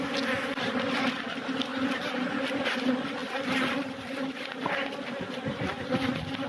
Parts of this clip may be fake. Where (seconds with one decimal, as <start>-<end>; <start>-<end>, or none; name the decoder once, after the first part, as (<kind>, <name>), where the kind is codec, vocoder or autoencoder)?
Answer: 1.7-2.4 (vocoder, BigVGAN v2)